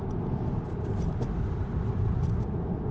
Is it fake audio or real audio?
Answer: real